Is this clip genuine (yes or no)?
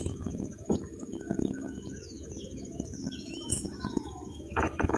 no